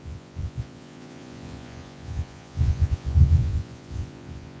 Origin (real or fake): fake